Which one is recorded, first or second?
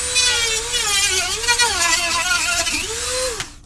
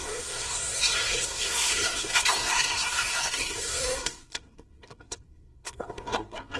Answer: first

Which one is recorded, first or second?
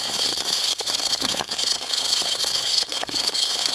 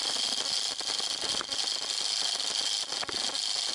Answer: second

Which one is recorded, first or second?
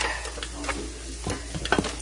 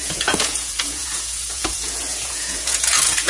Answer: first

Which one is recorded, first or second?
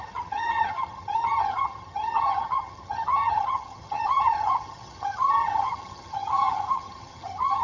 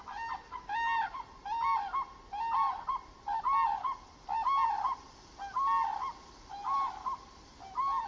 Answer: second